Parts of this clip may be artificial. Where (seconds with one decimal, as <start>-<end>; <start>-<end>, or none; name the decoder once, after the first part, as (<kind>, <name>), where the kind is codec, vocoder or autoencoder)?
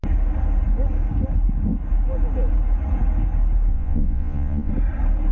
3.7-4.7 (vocoder, Vocos)